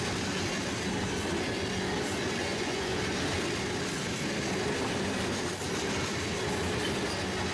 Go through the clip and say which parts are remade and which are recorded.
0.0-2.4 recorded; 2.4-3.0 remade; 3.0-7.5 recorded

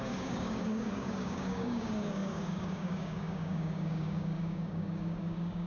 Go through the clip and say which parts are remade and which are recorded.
0.0-5.7 remade